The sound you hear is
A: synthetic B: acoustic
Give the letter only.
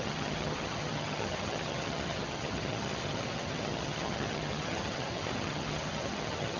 A